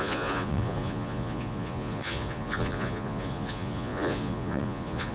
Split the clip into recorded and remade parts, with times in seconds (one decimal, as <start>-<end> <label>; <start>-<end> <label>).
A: 0.0-5.1 remade